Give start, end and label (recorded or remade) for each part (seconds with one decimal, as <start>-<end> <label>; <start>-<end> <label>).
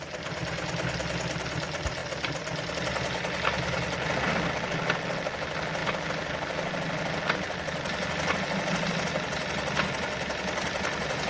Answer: 0.0-11.3 recorded